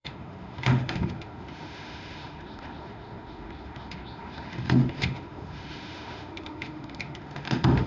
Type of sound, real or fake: fake